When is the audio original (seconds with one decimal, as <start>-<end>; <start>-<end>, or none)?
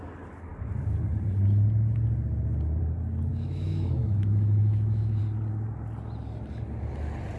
0.0-3.3; 5.2-7.4